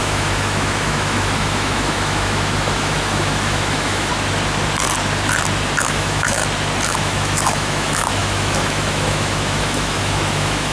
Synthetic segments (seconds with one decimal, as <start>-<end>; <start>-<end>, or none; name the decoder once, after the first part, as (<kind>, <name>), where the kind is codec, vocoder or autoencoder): 0.0-4.1 (autoencoder, DAC-VAE); 5.8-6.4; 6.9-10.7